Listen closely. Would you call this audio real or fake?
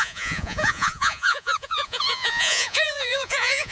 fake